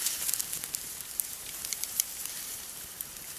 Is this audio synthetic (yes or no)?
yes